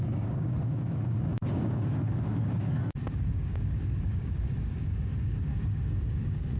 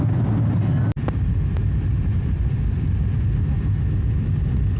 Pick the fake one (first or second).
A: first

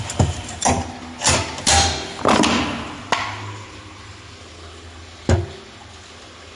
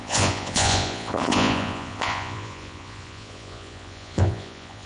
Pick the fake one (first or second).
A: second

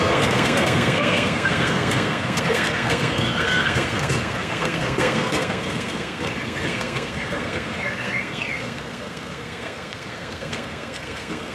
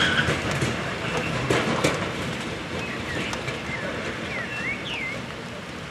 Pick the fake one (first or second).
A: first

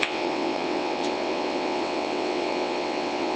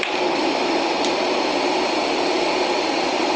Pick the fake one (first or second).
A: first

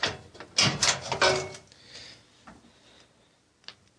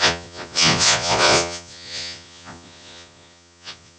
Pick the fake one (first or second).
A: second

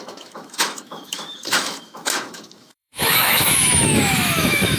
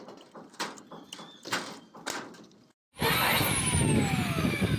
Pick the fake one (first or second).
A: first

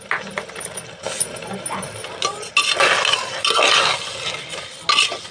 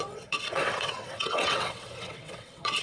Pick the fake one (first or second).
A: second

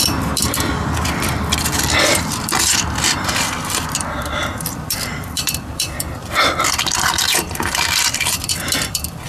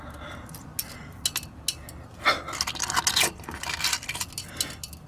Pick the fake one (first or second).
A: first